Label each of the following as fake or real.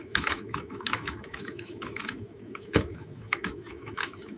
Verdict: fake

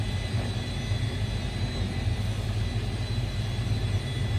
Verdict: real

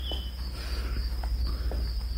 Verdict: real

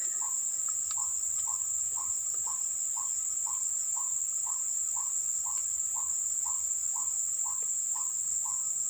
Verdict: real